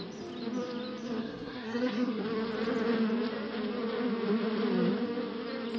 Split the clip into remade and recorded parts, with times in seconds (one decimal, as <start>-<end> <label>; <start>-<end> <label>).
0.0-1.2 recorded; 1.2-2.2 remade; 2.2-5.8 recorded

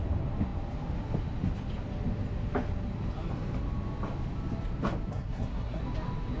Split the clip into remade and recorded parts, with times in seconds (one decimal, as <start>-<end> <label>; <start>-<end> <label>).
0.0-5.1 recorded; 5.1-5.8 remade; 5.8-6.4 recorded

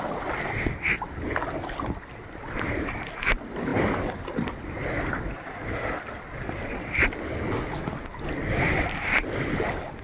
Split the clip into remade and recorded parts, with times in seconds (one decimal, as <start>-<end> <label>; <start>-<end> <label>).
0.0-10.0 recorded

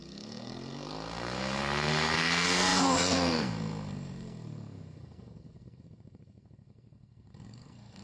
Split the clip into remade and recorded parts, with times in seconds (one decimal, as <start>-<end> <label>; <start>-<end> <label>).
0.0-8.0 remade

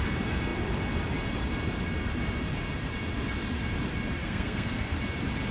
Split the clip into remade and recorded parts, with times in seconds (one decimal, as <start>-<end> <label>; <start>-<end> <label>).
0.0-4.2 recorded; 4.2-4.9 remade; 4.9-5.5 recorded

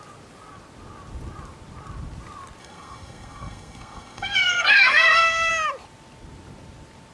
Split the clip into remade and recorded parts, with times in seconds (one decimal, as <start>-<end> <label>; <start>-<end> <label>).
0.0-2.6 recorded; 2.6-5.5 remade; 5.5-7.1 recorded

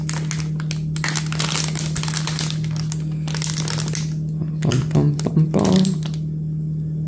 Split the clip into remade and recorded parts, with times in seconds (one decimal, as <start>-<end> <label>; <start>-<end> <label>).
0.0-7.1 recorded